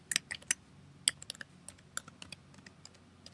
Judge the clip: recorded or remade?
recorded